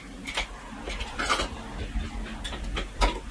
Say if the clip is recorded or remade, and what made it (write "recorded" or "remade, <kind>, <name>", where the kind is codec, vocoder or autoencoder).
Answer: remade, vocoder, BigVGAN v2